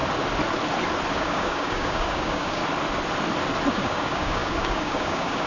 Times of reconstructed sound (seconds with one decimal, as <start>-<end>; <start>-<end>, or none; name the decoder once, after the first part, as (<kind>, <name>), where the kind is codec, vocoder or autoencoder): 1.1-2.6 (codec, DAC); 3.7-5.5